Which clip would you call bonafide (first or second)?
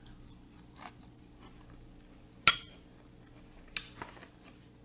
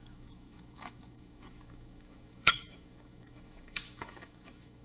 first